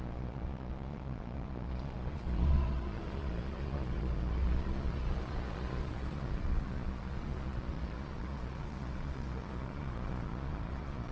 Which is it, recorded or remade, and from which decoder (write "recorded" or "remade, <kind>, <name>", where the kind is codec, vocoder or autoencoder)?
remade, vocoder, Vocos